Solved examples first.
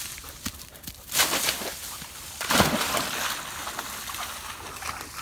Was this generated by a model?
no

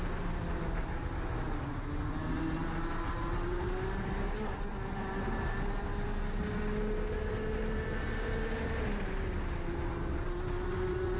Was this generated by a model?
no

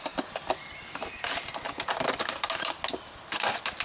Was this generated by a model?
no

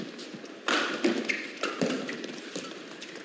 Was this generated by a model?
yes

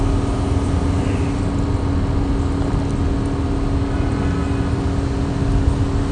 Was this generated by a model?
no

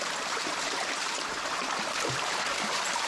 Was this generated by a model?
yes